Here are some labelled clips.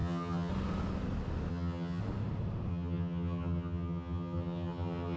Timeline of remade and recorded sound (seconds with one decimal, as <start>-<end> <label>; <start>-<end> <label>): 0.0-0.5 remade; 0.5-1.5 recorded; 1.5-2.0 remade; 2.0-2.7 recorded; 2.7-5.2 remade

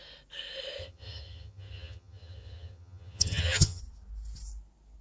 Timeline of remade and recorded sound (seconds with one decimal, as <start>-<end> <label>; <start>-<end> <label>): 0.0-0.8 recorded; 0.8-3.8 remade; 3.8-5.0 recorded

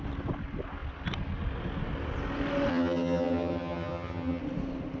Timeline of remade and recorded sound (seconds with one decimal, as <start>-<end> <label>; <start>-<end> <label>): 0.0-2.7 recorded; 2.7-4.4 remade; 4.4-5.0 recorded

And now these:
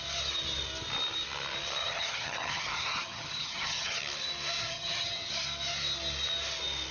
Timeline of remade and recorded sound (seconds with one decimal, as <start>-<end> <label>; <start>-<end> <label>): 0.0-1.8 recorded; 1.8-4.0 remade; 4.0-4.6 recorded; 4.6-5.3 remade; 5.3-6.9 recorded